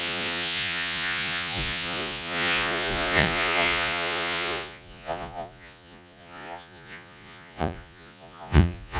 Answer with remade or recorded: remade